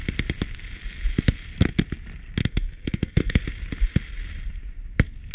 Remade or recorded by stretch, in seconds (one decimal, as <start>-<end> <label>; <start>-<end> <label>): 0.0-2.4 recorded; 2.4-3.4 remade; 3.4-5.3 recorded